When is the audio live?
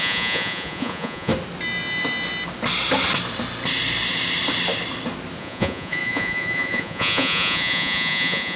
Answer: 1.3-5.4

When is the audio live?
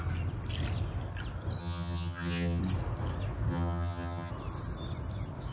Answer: 0.0-1.6; 2.6-3.5; 4.3-5.5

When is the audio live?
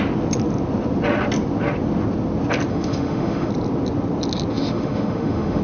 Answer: 0.0-2.7; 3.5-4.5